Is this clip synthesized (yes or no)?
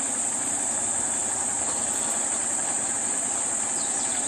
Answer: no